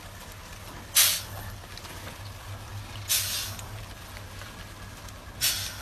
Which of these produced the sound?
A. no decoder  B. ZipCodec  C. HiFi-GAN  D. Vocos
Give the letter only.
A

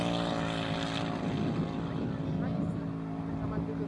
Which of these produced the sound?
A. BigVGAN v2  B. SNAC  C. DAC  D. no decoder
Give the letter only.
D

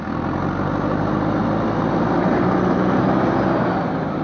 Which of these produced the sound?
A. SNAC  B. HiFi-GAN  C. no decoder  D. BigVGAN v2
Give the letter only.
C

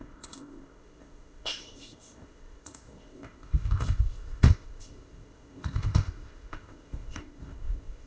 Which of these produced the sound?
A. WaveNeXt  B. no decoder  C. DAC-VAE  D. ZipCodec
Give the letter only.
D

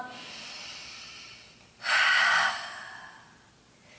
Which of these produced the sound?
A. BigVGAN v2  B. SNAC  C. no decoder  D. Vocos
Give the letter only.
C